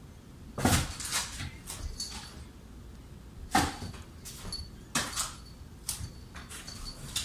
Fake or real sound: real